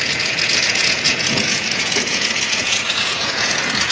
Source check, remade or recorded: remade